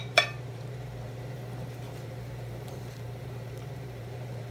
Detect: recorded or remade remade